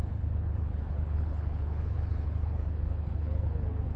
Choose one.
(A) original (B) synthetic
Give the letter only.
B